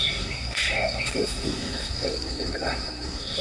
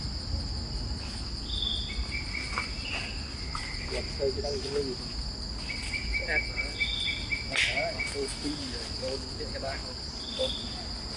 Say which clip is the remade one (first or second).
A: first